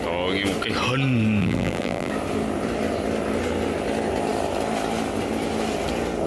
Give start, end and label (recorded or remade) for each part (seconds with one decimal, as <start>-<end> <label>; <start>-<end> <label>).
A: 0.0-1.4 recorded; 1.4-2.1 remade; 2.1-6.3 recorded